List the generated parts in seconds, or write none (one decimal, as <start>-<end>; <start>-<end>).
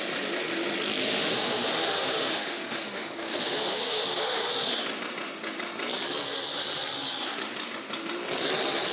1.0-4.7